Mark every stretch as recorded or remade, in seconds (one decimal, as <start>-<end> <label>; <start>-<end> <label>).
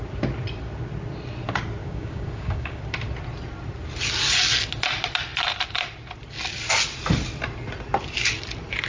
0.0-1.8 recorded; 1.8-2.8 remade; 2.8-8.9 recorded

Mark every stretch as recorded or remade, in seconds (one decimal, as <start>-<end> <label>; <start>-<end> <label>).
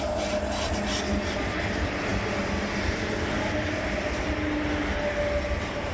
0.0-5.9 recorded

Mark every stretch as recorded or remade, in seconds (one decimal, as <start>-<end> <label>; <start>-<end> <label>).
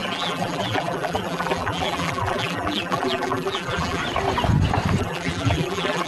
0.0-4.0 remade; 4.0-5.0 recorded; 5.0-6.1 remade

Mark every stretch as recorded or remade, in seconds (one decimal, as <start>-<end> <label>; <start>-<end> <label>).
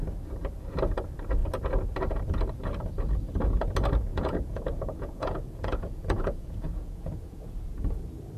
0.0-4.1 recorded; 4.1-8.0 remade; 8.0-8.4 recorded